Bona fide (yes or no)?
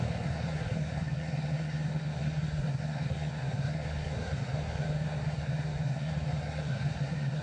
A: no